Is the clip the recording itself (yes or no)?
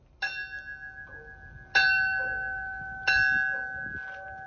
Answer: yes